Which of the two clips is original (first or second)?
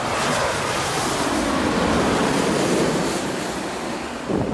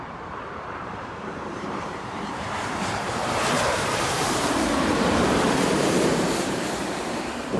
first